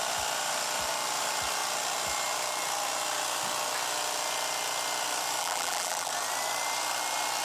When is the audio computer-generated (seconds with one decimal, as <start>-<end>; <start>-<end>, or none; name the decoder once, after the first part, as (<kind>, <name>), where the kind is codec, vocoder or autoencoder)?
5.4-6.1 (vocoder, BigVGAN v2)